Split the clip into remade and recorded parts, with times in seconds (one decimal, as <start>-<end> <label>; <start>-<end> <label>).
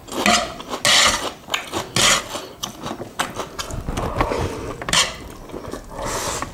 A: 0.0-3.6 recorded; 3.6-5.0 remade; 5.0-6.5 recorded